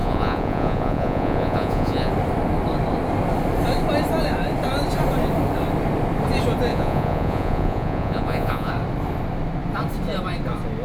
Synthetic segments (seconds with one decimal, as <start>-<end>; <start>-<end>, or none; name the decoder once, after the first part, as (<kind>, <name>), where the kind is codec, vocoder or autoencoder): 0.0-2.1 (vocoder, Vocos); 6.7-8.7